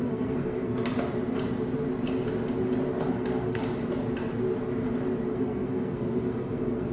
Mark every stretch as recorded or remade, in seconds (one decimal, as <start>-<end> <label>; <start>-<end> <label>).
0.0-0.9 remade; 0.9-3.1 recorded; 3.1-3.6 remade; 3.6-5.3 recorded; 5.3-6.9 remade